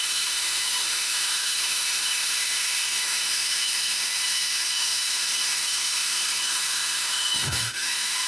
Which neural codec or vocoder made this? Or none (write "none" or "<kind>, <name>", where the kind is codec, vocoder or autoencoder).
autoencoder, DAC-VAE